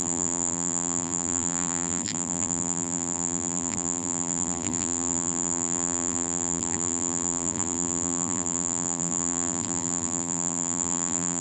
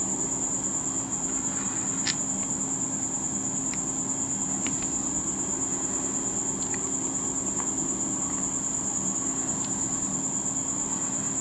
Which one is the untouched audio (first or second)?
second